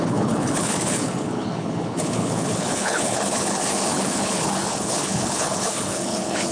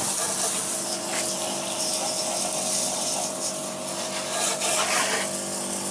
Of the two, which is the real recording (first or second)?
second